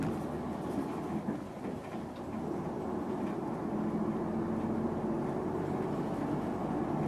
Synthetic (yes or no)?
no